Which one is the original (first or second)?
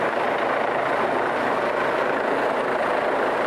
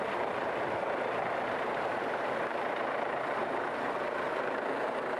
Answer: first